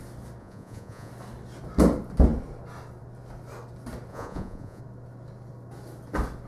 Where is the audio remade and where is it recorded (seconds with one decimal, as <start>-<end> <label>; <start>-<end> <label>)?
0.0-0.4 recorded; 0.4-1.1 remade; 1.1-4.1 recorded; 4.1-4.8 remade; 4.8-6.5 recorded